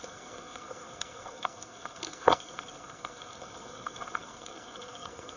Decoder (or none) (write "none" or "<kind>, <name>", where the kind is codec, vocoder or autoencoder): codec, SNAC